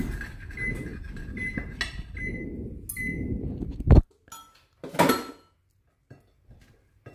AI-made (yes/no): no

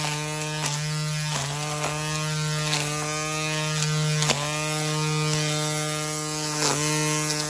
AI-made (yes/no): no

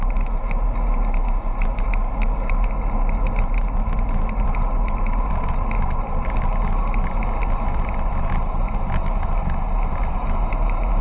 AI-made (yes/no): no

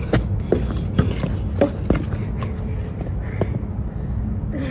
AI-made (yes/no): no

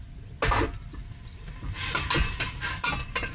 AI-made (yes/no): no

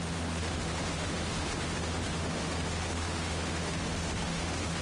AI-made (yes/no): yes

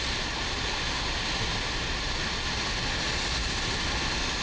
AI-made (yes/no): no